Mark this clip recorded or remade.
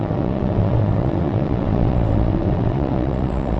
remade